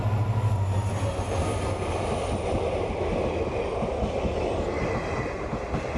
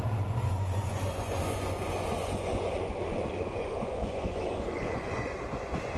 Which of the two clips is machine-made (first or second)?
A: second